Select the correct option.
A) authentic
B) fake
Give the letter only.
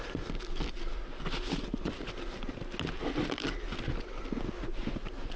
A